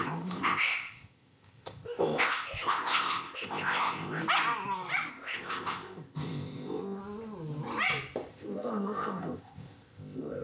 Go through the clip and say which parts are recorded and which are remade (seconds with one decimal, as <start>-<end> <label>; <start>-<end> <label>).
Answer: 0.0-4.2 remade; 4.2-5.1 recorded; 5.1-7.0 remade; 7.0-8.3 recorded; 8.3-10.4 remade

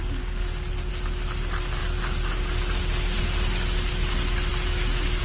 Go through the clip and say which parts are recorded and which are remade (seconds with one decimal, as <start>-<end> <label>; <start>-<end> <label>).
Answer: 0.0-5.2 recorded

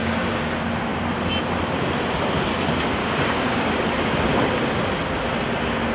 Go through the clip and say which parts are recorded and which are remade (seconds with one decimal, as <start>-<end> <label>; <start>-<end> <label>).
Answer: 0.0-0.5 remade; 0.5-3.0 recorded; 3.0-3.6 remade; 3.6-5.9 recorded